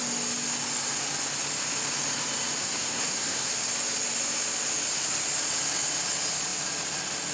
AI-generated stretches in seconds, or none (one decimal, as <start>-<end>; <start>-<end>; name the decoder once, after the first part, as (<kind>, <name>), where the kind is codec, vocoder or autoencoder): 2.6-3.5 (codec, SNAC)